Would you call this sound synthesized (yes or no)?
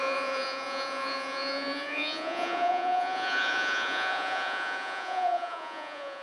yes